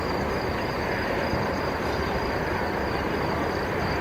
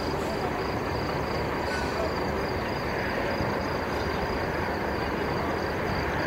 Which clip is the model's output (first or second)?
first